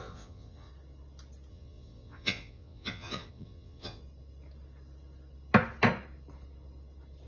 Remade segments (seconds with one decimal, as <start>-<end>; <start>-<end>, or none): 0.0-0.7; 1.5-4.0